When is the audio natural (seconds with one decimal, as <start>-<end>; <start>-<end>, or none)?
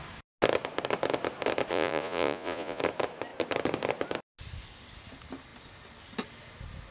0.0-1.7; 2.8-6.9